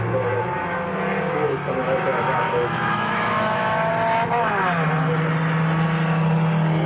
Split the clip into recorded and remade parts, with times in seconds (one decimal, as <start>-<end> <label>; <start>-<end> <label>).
0.0-1.8 recorded; 1.8-3.9 remade; 3.9-6.9 recorded